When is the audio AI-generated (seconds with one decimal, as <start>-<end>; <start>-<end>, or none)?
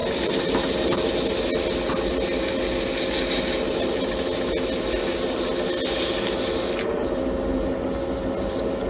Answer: none